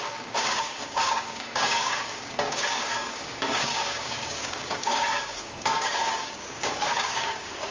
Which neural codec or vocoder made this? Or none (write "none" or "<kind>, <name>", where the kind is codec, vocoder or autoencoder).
codec, DAC